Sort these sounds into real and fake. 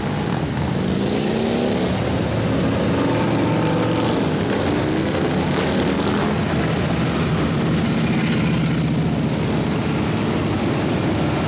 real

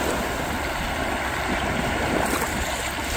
real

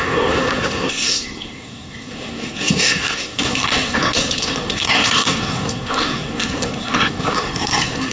fake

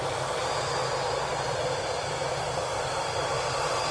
real